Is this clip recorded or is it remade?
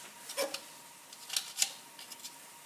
recorded